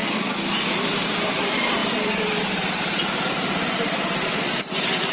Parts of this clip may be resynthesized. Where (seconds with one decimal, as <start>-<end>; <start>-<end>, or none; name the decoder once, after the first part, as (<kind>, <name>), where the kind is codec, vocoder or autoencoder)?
0.7-5.1 (vocoder, BigVGAN v2)